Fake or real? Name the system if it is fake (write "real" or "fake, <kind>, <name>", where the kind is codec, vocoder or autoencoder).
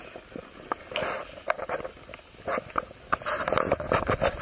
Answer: real